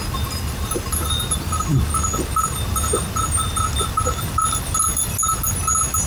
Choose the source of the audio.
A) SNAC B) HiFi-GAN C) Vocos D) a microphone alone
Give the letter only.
D